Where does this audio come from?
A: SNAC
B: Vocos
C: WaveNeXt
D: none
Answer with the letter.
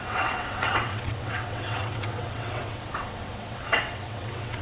C